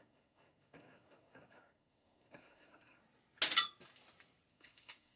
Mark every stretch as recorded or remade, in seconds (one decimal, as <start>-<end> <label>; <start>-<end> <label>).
0.0-3.0 remade; 3.0-4.5 recorded; 4.5-5.2 remade